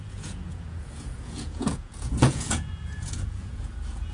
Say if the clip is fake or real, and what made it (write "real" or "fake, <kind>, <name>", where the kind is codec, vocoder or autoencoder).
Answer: fake, vocoder, Vocos